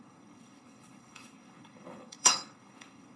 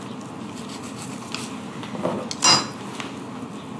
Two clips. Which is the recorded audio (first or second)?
second